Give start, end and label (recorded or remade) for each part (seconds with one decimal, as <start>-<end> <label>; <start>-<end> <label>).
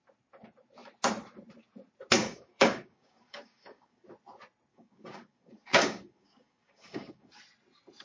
0.0-2.2 recorded; 2.2-4.0 remade; 4.0-4.7 recorded; 4.7-7.4 remade; 7.4-8.0 recorded